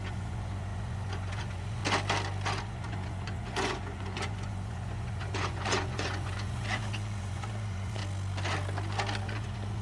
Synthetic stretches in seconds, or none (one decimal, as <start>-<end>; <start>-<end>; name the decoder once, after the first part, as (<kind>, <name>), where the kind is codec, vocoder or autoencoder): 0.0-1.8 (vocoder, Vocos); 2.6-8.0; 9.2-9.8